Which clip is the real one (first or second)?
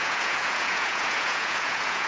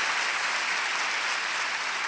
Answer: second